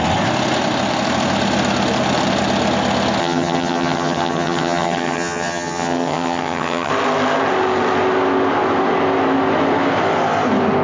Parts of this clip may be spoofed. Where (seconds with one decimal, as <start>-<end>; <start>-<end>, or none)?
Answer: 3.2-6.9